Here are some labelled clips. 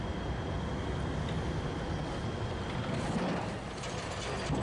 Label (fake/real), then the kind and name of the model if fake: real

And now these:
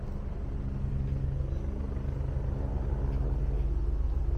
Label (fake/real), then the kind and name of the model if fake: real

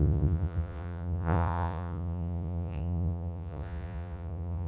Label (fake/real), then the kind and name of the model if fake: fake, vocoder, Vocos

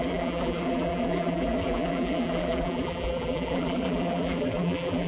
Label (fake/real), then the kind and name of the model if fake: fake, vocoder, BigVGAN v2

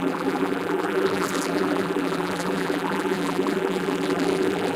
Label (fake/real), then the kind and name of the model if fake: fake, vocoder, BigVGAN v2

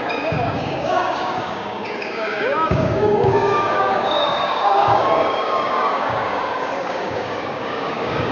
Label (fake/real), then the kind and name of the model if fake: fake, codec, DAC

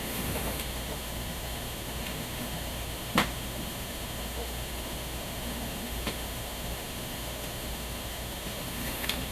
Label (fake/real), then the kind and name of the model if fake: fake, autoencoder, DAC-VAE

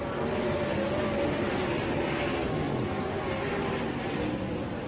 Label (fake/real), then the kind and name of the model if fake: real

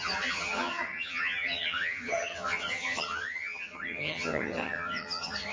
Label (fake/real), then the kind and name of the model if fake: fake, vocoder, HiFi-GAN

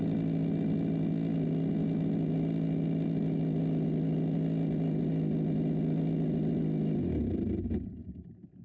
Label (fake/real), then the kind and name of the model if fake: real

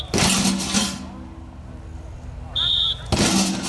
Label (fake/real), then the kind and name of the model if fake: real